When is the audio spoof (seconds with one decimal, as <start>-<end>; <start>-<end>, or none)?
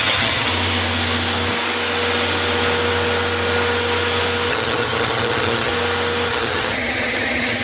0.0-0.5; 4.5-5.7; 6.3-7.6